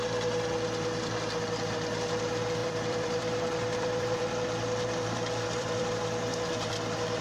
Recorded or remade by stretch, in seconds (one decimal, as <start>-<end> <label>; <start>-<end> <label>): 0.0-2.6 recorded; 2.6-5.9 remade; 5.9-7.2 recorded